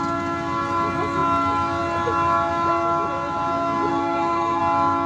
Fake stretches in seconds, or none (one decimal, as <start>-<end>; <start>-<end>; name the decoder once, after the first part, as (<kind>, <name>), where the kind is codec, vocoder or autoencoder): 3.9-4.6 (codec, SNAC)